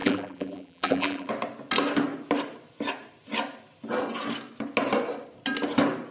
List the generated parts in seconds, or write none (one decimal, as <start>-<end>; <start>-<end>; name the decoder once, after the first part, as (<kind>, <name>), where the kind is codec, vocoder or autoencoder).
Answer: 0.0-1.3 (vocoder, BigVGAN v2)